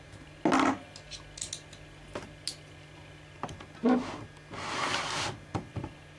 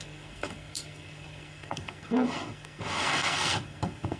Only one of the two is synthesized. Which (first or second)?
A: second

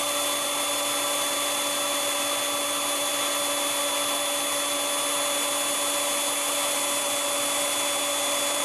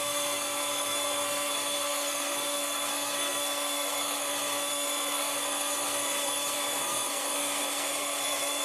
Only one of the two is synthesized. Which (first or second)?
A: second